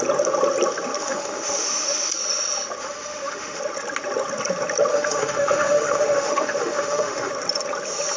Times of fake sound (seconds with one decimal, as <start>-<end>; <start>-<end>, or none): 1.0-2.1; 2.8-3.6; 4.9-7.3